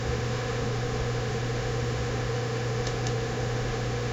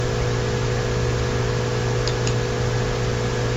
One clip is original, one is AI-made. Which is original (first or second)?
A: second